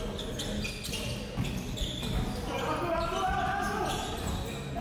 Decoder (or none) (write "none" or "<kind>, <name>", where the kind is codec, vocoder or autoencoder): none